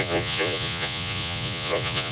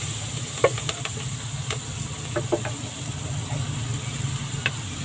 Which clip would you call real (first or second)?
second